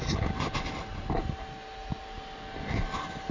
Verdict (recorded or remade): recorded